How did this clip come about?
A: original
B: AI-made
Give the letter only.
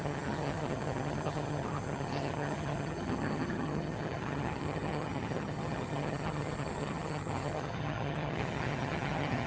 B